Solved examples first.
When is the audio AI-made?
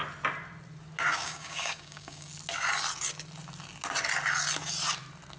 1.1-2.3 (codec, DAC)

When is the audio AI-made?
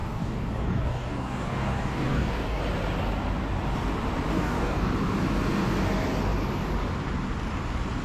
0.0-2.6 (codec, DAC); 4.3-4.9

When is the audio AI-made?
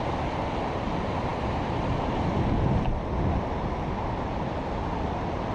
none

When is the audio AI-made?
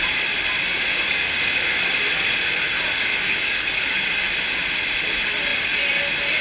0.9-1.9 (codec, DAC); 3.1-4.1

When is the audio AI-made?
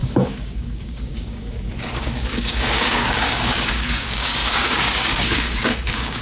0.0-6.2 (codec, DAC)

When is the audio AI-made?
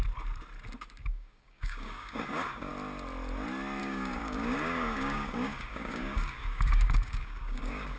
1.0-2.7 (codec, DAC); 3.8-8.0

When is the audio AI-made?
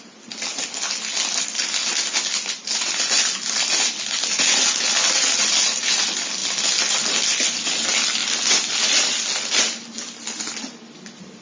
none